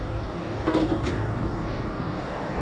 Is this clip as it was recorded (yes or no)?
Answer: no